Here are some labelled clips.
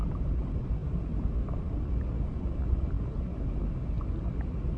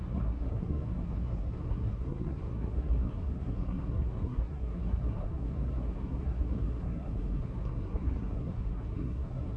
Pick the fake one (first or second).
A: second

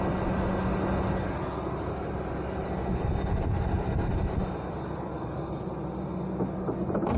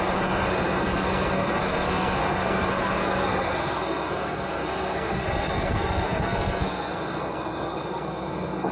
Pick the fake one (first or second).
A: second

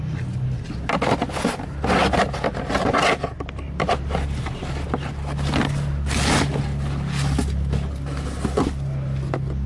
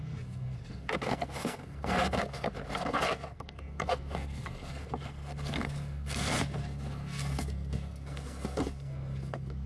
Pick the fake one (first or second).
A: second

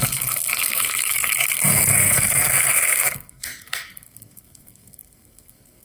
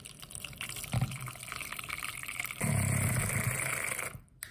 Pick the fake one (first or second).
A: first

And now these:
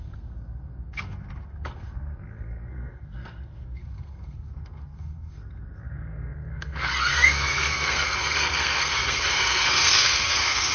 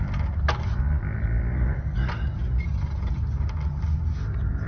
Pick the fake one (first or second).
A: first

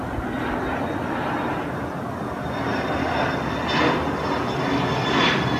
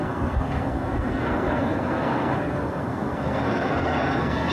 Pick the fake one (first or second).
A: second